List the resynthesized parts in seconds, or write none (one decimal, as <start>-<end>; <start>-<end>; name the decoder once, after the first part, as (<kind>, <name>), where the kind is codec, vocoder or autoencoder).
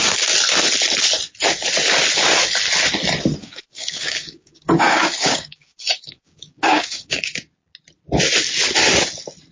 3.4-7.3 (codec, DAC)